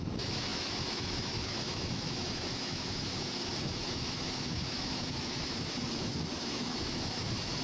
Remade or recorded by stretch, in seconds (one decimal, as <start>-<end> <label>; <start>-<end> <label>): 0.0-7.6 remade